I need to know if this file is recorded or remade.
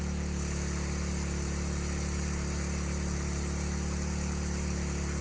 recorded